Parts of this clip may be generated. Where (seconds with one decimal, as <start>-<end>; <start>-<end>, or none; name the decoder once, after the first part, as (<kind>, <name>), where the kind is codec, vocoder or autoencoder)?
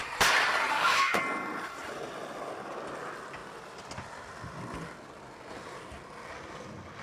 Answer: 0.7-1.2 (autoencoder, DAC-VAE)